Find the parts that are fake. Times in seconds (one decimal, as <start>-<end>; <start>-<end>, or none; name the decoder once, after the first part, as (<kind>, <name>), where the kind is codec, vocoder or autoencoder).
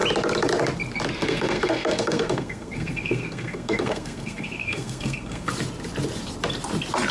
1.2-5.5 (codec, SNAC)